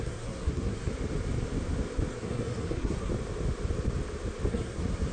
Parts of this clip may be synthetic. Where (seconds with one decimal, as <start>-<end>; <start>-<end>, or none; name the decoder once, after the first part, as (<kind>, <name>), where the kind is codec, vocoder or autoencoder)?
0.0-0.9 (codec, SNAC); 2.1-3.1; 4.5-5.1